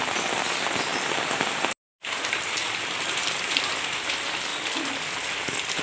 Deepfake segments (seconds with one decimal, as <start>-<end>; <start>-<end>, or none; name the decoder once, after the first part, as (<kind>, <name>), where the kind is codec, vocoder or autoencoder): none